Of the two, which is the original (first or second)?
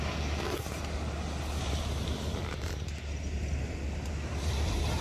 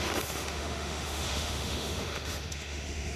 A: first